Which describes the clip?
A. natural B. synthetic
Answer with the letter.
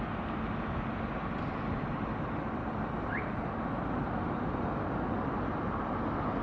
A